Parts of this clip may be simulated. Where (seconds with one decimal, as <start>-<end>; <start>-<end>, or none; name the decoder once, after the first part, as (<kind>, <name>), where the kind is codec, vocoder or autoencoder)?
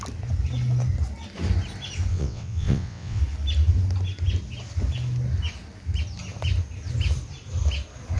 2.1-3.2 (vocoder, WaveNeXt)